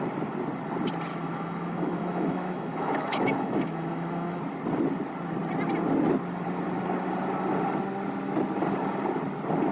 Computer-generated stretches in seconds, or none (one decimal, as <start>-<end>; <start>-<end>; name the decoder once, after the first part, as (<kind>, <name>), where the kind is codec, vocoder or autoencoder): 1.1-4.4 (autoencoder, DAC-VAE)